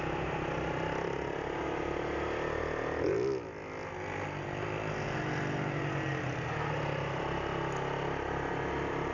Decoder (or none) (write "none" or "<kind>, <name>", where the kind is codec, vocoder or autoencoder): none